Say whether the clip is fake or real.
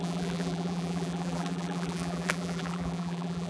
fake